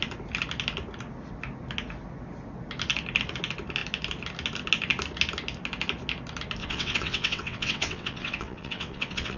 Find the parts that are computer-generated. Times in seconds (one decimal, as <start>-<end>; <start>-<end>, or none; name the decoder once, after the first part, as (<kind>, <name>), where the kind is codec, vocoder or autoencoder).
6.6-9.4 (vocoder, WaveNeXt)